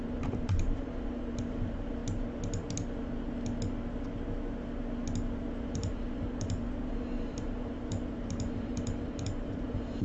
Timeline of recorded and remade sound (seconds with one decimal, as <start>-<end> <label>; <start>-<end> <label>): 0.0-2.0 remade; 2.0-5.6 recorded; 5.6-10.0 remade